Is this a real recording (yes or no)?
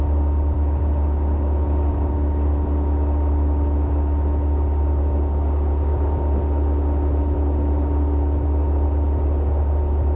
yes